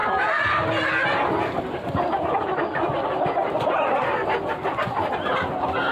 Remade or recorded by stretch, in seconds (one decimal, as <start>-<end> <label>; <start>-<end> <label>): 0.0-5.9 recorded